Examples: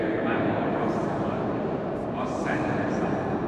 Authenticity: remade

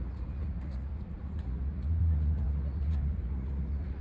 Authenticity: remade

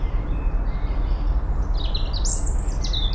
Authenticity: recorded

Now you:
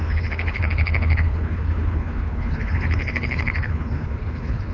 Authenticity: remade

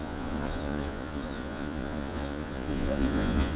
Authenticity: remade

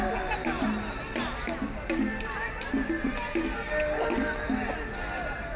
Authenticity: recorded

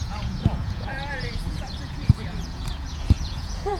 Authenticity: remade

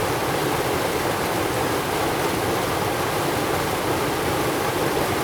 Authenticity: recorded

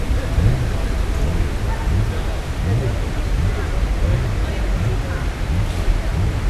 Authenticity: recorded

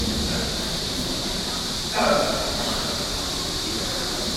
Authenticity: remade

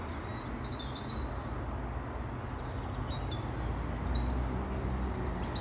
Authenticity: recorded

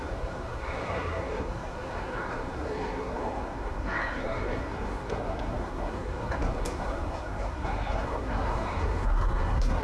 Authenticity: remade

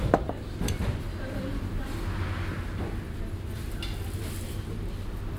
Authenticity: recorded